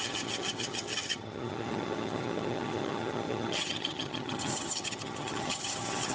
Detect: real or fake fake